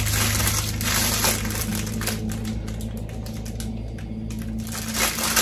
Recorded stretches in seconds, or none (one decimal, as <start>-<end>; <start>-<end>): 0.0-5.4